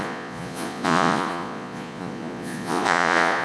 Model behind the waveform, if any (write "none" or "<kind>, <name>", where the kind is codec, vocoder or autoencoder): vocoder, Vocos